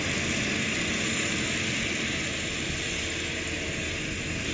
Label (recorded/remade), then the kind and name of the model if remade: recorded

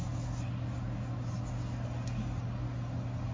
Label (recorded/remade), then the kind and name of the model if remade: recorded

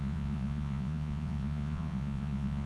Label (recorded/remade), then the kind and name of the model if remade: remade, vocoder, Vocos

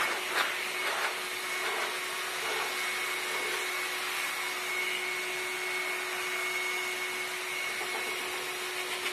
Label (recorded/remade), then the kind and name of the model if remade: recorded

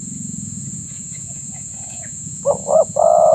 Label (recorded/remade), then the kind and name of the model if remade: remade, vocoder, Vocos